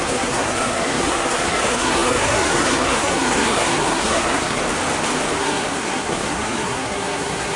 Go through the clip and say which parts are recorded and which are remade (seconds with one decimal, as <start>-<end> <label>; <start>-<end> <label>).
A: 0.0-4.6 remade; 4.6-5.4 recorded; 5.4-7.6 remade